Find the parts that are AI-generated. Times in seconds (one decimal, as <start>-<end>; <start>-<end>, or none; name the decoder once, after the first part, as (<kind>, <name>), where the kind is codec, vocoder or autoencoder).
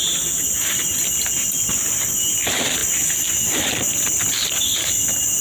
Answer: none